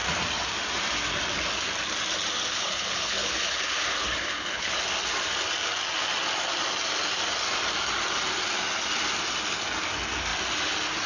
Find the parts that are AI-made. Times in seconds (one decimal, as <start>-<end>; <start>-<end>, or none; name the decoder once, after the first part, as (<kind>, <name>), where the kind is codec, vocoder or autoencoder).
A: 2.5-4.8 (codec, HILCodec)